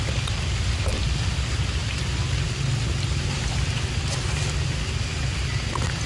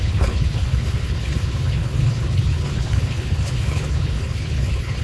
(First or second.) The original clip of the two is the first